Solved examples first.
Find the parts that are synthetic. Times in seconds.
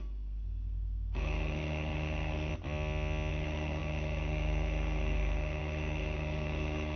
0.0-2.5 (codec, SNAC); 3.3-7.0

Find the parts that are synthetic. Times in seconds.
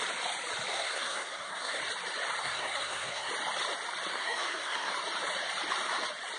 0.7-1.8 (codec, SNAC); 2.4-3.3; 4.1-4.9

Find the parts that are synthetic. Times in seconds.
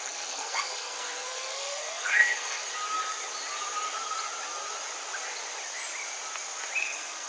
0.0-2.7 (codec, SNAC); 6.8-7.3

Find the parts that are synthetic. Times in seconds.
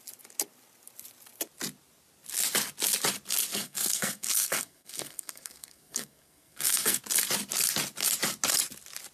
3.5-7.0 (codec, SNAC)